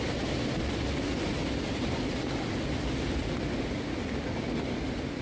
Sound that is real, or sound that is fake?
real